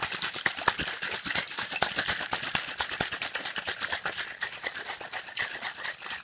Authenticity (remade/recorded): recorded